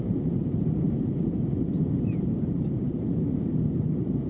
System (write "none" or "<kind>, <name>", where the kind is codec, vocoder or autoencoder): vocoder, BigVGAN v2